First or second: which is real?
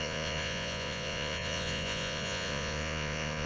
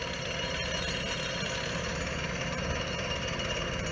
second